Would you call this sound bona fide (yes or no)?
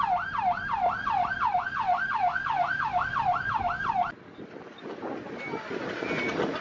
yes